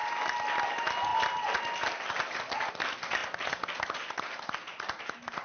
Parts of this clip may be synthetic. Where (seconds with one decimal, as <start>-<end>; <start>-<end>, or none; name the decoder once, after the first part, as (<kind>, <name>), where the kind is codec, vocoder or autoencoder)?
none